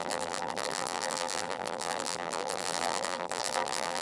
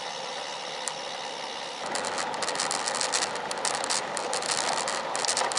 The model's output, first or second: first